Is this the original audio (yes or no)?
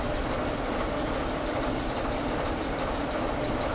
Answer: no